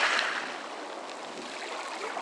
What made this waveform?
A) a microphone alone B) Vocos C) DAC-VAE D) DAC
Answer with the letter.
A